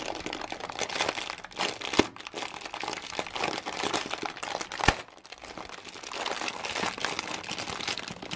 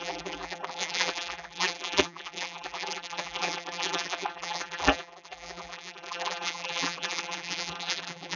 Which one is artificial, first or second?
second